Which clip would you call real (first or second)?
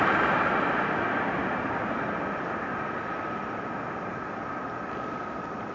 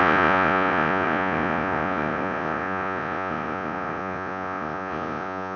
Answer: first